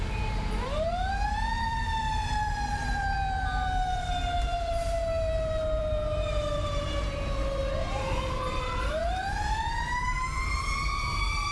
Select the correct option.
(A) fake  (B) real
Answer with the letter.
A